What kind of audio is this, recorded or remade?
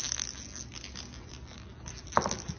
recorded